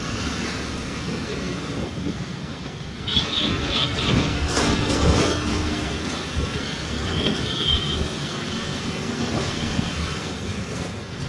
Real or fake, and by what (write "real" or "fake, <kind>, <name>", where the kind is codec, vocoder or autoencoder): fake, codec, SNAC